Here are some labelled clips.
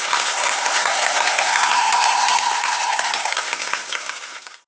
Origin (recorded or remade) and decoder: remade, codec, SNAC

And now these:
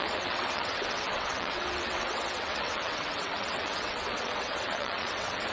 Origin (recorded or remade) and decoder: remade, vocoder, WaveNeXt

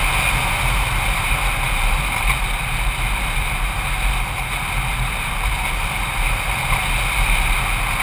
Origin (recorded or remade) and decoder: recorded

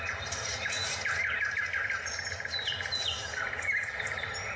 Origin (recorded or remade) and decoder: remade, vocoder, BigVGAN v2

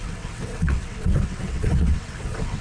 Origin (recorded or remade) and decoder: remade, vocoder, WaveNeXt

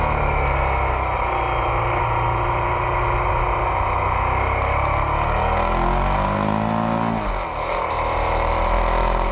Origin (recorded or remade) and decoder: recorded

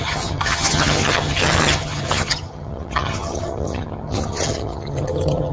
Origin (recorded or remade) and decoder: remade, vocoder, HiFi-GAN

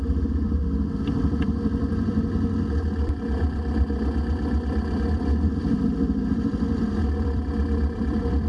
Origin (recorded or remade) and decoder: remade, vocoder, BigVGAN v2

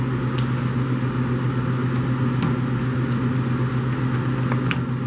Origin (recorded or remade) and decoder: recorded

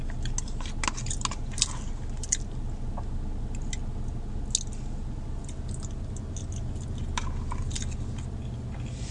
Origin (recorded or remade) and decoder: recorded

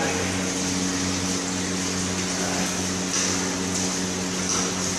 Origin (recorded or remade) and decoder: recorded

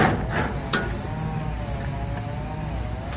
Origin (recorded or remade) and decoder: recorded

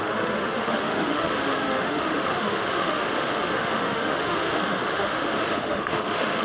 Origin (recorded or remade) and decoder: remade, autoencoder, DAC-VAE